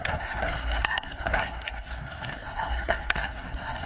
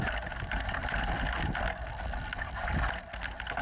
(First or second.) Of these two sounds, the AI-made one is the first